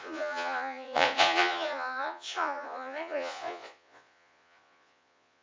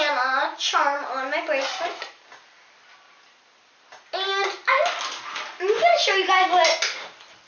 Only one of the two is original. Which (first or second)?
second